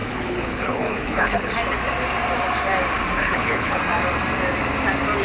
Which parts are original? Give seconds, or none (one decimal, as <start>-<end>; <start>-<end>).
1.5-3.2; 3.8-5.2

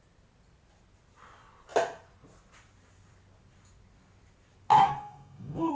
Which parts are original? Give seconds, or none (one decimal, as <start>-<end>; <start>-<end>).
0.0-4.7

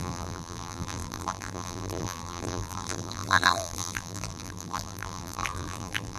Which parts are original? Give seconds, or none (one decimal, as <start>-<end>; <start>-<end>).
none

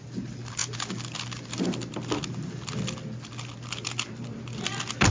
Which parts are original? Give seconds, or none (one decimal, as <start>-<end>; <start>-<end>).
0.0-5.1

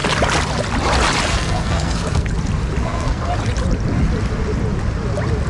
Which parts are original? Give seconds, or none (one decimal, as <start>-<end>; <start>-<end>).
0.0-1.3; 2.3-2.8; 3.3-5.5

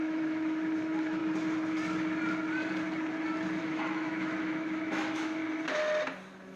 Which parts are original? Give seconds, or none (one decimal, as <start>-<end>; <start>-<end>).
1.2-3.6; 5.4-6.6

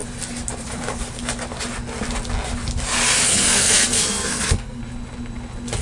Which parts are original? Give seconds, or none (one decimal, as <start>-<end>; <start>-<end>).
0.0-3.3; 4.8-5.8